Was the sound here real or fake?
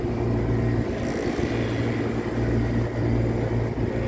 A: real